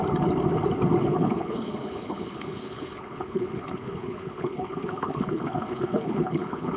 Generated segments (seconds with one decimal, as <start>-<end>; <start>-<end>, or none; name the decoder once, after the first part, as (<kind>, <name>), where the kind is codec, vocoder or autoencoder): 1.0-6.8 (codec, HILCodec)